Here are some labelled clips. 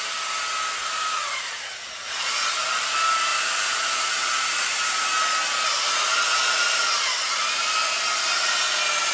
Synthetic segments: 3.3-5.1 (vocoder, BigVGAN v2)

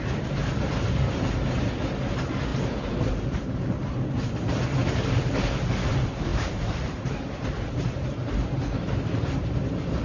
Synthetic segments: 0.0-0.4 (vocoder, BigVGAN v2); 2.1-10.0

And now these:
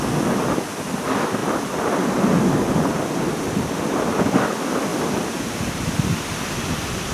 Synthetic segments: 1.4-2.4 (vocoder, BigVGAN v2); 4.9-5.6

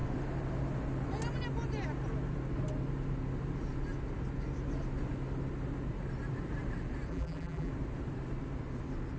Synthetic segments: 7.1-7.7 (vocoder, BigVGAN v2)